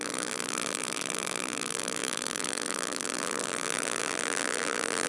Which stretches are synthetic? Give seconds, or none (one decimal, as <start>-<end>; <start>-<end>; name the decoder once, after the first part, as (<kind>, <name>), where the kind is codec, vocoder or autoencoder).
0.0-5.1 (vocoder, BigVGAN v2)